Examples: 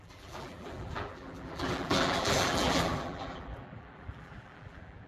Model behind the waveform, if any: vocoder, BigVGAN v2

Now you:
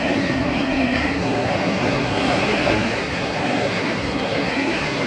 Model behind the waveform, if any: codec, SNAC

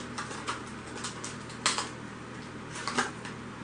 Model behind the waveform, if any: none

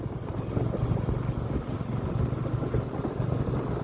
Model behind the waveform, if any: none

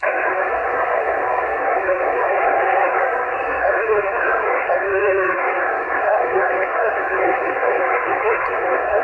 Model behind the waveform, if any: codec, SNAC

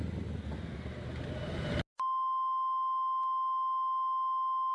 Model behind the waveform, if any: none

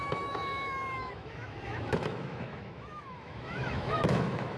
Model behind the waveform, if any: autoencoder, DAC-VAE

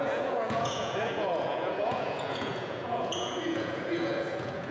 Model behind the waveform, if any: vocoder, Vocos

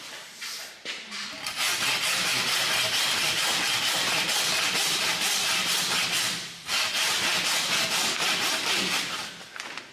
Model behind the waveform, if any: none